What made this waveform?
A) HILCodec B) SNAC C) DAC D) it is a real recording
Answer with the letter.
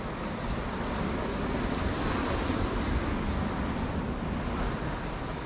D